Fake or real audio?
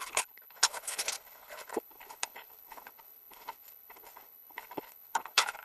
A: fake